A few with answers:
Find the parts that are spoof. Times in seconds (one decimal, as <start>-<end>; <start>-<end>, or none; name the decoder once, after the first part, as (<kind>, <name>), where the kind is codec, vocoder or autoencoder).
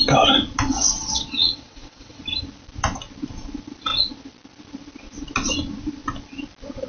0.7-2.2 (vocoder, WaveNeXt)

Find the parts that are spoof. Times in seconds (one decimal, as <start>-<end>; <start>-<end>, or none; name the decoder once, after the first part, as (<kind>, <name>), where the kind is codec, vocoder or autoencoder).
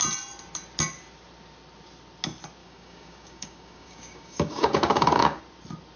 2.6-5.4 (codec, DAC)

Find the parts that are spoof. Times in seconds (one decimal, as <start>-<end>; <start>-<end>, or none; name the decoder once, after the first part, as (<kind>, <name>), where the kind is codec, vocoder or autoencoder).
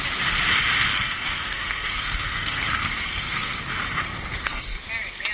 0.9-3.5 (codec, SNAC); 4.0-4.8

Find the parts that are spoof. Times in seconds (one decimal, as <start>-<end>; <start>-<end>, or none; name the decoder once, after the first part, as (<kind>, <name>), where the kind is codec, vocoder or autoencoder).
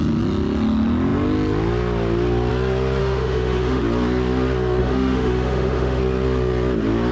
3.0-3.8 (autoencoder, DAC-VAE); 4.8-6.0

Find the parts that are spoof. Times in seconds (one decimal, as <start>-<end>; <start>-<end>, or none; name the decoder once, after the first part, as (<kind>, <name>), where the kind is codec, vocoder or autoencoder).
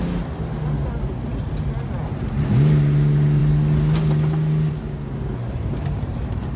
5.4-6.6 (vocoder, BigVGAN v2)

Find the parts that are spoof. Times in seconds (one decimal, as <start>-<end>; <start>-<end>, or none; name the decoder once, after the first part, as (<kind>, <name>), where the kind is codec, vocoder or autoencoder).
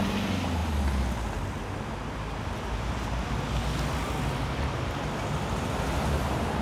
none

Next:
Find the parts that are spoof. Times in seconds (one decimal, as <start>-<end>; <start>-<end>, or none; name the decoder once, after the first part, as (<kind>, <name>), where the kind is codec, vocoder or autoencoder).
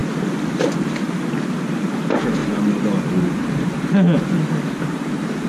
2.4-3.9 (vocoder, BigVGAN v2)